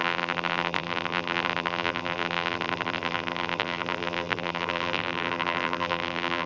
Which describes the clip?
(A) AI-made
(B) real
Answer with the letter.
A